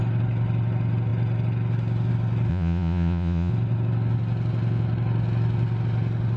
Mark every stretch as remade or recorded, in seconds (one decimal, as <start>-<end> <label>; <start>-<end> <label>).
0.0-2.5 recorded; 2.5-3.5 remade; 3.5-6.4 recorded